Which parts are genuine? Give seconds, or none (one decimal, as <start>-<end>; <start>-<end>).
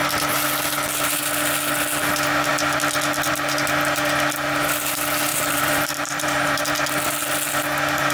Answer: 0.0-5.3; 6.6-8.1